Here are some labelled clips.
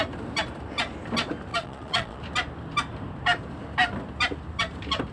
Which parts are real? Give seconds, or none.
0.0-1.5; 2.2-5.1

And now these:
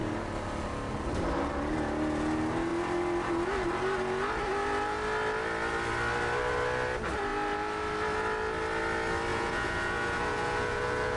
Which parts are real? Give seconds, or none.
0.0-9.3

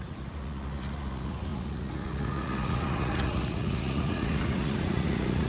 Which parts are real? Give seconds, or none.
none